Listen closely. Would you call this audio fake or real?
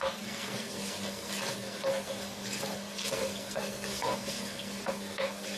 fake